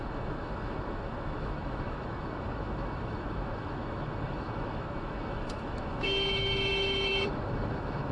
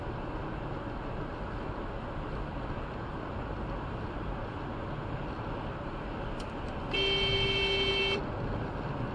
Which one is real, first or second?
second